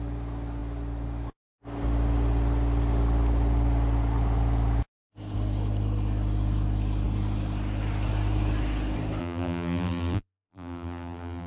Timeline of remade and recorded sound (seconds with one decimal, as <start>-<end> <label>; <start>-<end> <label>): 0.0-9.2 recorded; 9.2-11.5 remade